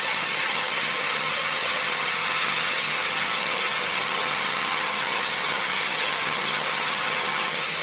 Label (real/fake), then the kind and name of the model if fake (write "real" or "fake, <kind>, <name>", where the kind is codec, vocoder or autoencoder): fake, vocoder, HiFi-GAN